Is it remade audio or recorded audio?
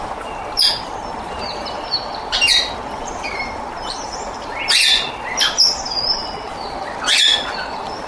recorded